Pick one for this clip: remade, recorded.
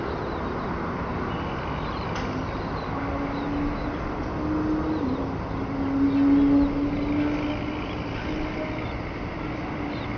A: recorded